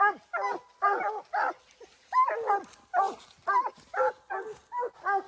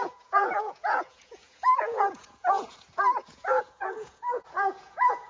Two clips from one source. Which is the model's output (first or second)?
second